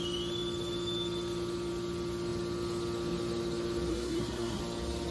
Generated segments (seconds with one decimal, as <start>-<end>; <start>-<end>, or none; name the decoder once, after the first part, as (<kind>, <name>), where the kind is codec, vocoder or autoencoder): 3.9-4.6 (codec, SNAC)